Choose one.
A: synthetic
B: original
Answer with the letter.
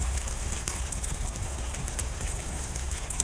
A